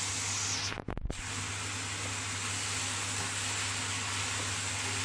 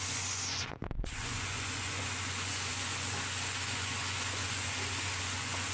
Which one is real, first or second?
first